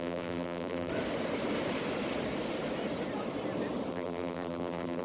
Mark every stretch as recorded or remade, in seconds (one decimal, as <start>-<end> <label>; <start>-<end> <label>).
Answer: 0.0-0.9 remade; 0.9-3.9 recorded; 3.9-5.0 remade